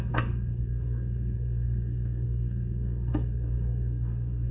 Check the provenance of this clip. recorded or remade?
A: remade